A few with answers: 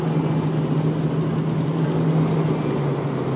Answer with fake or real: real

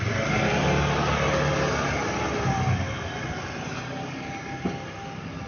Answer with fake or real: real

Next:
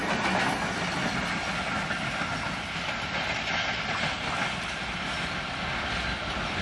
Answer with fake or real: real